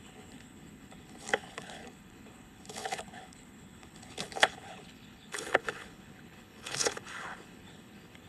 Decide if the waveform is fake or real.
fake